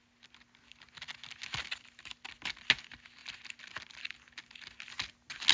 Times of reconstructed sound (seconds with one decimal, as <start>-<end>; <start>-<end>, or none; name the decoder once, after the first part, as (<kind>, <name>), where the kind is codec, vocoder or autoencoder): none